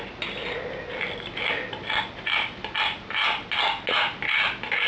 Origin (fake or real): real